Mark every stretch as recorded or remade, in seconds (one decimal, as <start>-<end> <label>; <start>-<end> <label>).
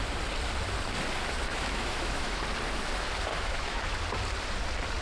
0.0-1.5 recorded; 1.5-2.4 remade; 2.4-3.3 recorded; 3.3-3.8 remade; 3.8-5.0 recorded